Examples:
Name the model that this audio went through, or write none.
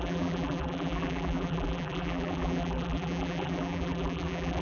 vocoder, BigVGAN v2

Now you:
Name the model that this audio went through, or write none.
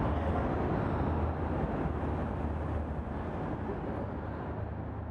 none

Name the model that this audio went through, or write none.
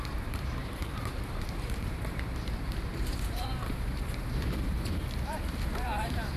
vocoder, BigVGAN v2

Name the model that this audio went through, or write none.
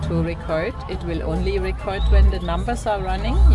none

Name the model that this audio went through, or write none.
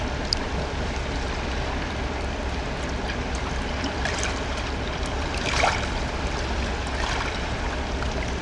vocoder, BigVGAN v2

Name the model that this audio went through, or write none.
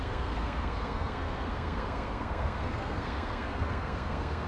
codec, SNAC